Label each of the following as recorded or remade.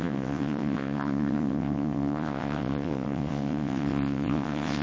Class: remade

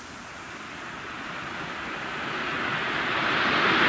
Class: recorded